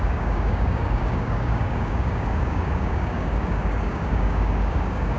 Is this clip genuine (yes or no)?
no